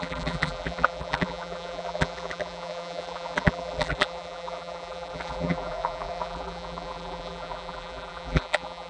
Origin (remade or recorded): remade